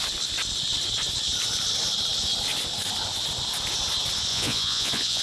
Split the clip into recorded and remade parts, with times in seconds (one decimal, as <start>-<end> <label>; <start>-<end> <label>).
0.0-4.3 recorded; 4.3-5.2 remade